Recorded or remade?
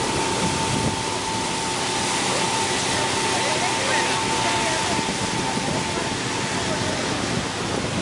recorded